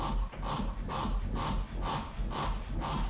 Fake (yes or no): no